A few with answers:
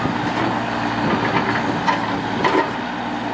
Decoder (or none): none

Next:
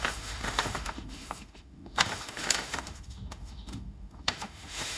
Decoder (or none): autoencoder, DAC-VAE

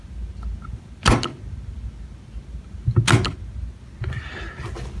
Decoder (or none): none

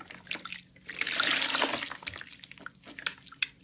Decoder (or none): none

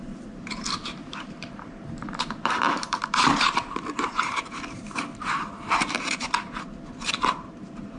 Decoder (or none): vocoder, BigVGAN v2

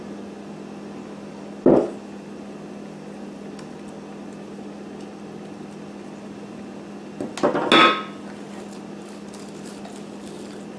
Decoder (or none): none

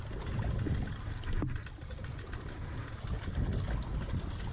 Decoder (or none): none